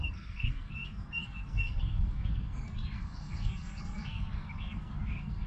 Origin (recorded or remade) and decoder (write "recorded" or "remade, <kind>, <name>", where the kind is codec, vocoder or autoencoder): remade, codec, SNAC